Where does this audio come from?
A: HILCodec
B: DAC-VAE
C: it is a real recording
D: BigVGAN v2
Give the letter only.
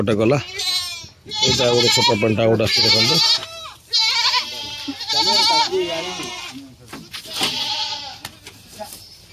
C